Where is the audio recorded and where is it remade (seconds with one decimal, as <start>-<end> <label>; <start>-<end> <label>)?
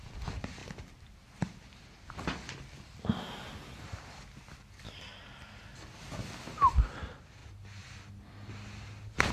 0.0-9.3 recorded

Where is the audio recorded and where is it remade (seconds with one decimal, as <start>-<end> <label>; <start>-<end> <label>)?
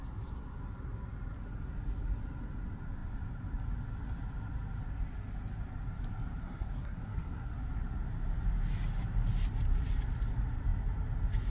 0.0-6.4 recorded; 6.4-7.5 remade; 7.5-11.5 recorded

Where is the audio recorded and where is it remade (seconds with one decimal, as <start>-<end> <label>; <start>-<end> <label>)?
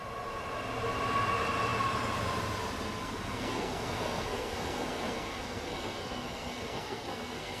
0.0-3.0 recorded; 3.0-7.6 remade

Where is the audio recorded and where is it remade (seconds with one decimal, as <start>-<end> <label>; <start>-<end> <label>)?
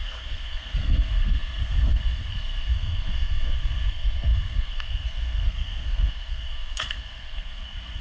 0.0-8.0 remade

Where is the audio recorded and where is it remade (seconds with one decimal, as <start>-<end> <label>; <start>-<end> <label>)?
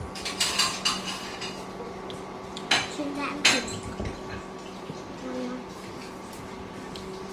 0.0-7.3 recorded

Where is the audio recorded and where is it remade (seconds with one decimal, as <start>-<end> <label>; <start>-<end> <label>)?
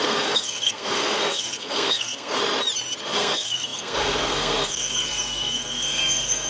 0.0-2.4 remade; 2.4-3.0 recorded; 3.0-6.5 remade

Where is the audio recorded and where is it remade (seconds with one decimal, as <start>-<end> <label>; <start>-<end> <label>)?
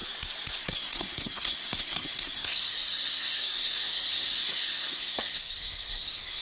0.0-0.6 recorded; 0.6-6.4 remade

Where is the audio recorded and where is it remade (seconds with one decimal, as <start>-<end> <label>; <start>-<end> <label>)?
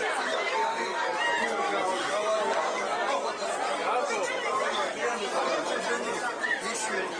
0.0-7.2 recorded